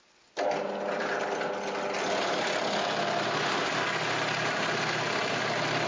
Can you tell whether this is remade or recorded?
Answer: recorded